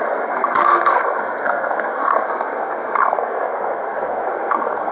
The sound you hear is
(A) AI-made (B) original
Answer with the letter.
A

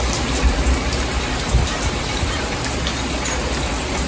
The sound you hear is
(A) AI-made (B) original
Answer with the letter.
B